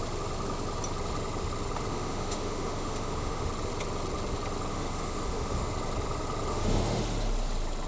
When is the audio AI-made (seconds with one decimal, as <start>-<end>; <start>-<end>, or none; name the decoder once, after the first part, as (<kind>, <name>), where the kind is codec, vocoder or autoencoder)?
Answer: 1.9-3.5 (autoencoder, DAC-VAE); 4.7-5.7; 6.5-7.0